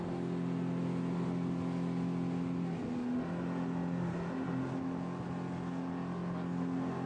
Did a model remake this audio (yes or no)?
no